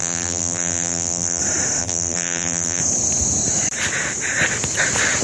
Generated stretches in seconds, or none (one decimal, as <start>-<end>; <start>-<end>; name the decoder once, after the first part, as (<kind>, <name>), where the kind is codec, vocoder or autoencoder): 0.0-1.4 (vocoder, BigVGAN v2); 1.8-2.8